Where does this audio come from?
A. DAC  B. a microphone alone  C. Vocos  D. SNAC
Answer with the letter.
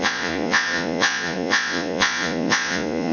C